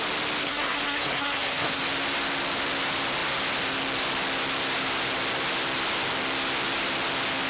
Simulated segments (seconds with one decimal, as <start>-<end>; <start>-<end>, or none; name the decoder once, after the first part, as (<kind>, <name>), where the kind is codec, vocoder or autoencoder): 0.4-1.8 (codec, SNAC)